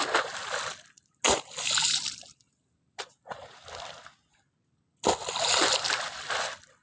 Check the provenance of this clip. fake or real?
real